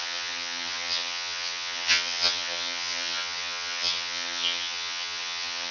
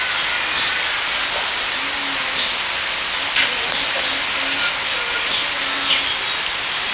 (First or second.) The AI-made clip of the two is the first